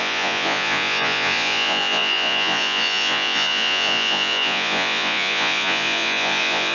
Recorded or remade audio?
remade